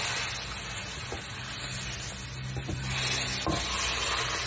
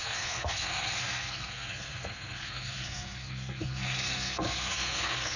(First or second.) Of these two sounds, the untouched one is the first